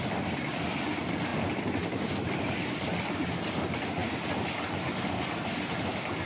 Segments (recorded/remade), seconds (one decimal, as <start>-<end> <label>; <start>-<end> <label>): 0.0-6.3 recorded